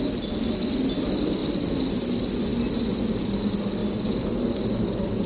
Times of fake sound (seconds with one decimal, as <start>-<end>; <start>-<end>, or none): none